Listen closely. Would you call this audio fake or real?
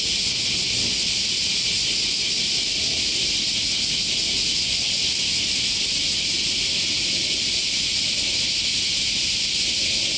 real